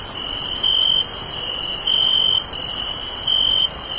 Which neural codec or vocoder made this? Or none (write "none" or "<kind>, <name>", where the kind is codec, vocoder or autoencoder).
none